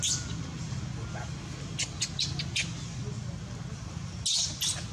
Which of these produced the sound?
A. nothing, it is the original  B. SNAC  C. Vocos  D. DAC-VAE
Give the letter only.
A